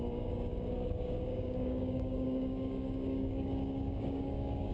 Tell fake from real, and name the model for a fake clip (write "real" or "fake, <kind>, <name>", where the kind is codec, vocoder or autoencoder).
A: fake, codec, DAC